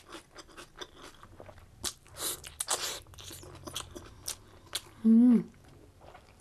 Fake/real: real